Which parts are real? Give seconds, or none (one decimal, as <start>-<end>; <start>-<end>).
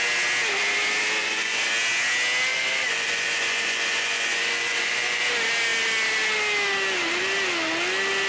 0.0-1.2; 1.7-2.5; 5.2-8.3